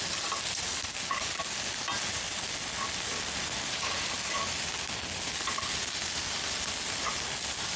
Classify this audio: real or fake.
real